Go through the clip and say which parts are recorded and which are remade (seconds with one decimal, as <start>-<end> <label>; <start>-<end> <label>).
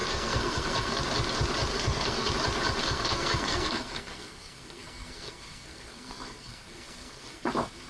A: 0.0-1.0 remade; 1.0-1.7 recorded; 1.7-2.3 remade; 2.3-2.8 recorded; 2.8-7.5 remade; 7.5-7.9 recorded